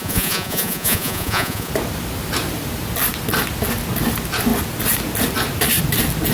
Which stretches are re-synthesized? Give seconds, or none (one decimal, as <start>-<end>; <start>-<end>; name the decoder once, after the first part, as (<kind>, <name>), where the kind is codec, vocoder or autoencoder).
0.0-1.7 (vocoder, Vocos)